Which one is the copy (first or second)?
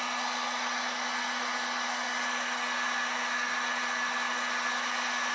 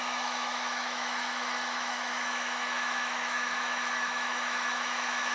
second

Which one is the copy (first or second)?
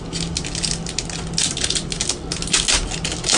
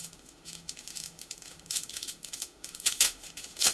second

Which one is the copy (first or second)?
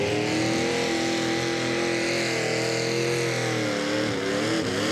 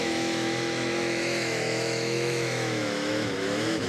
second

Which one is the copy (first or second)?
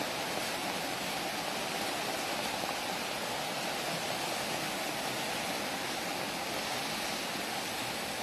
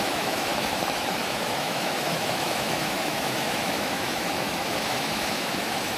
second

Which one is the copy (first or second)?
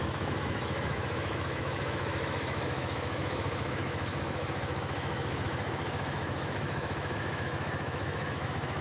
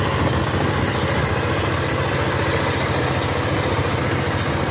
first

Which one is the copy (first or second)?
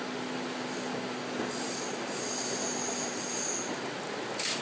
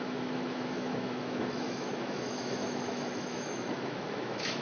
second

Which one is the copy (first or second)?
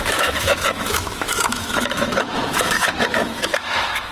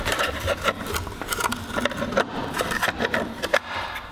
first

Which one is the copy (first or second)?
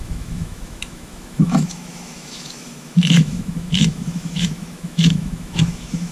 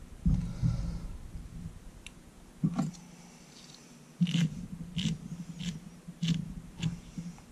first